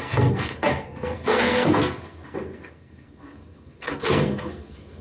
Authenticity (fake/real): fake